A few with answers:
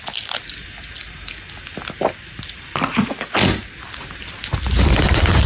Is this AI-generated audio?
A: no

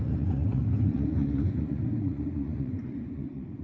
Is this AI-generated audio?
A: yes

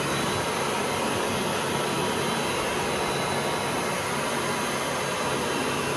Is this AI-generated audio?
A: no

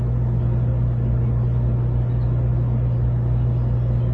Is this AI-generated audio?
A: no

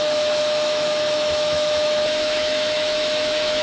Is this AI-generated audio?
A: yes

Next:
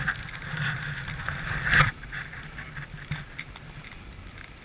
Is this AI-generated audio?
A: no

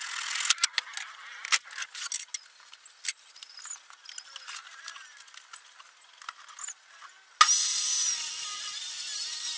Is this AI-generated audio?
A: no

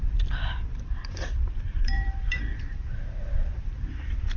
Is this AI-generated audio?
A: yes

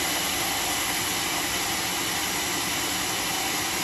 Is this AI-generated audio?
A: no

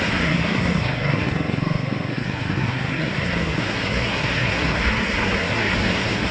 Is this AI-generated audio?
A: yes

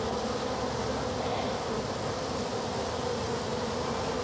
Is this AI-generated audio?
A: no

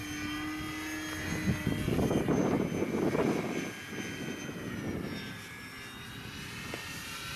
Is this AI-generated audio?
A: no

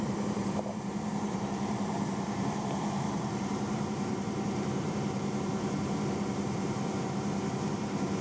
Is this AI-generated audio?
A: yes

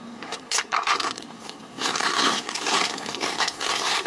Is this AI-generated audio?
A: yes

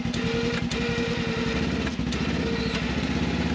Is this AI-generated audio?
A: no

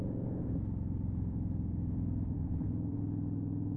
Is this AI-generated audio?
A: yes